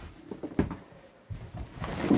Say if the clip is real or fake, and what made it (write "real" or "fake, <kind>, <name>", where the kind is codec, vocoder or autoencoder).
real